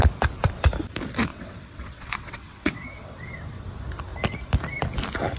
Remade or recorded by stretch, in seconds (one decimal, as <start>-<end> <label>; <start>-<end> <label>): 0.0-1.3 recorded; 1.3-3.2 remade; 3.2-5.4 recorded